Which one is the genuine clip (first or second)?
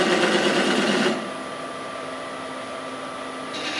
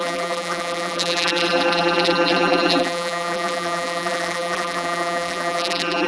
first